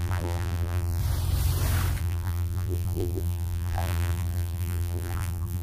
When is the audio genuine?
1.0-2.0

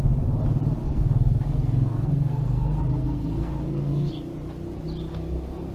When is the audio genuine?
0.0-0.8; 4.1-5.1

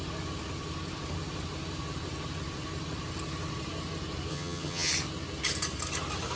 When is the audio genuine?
0.0-4.3; 4.9-6.4

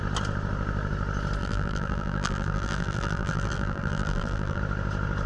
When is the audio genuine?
0.0-1.4; 4.6-5.3

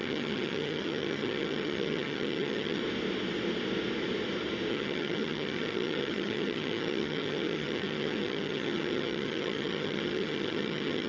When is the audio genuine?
2.8-4.7

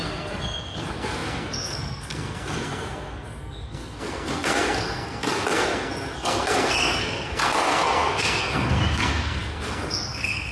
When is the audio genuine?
none

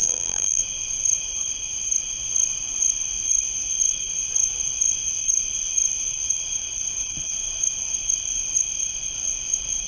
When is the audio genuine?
0.6-9.9

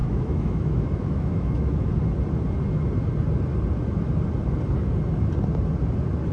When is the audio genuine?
1.9-6.3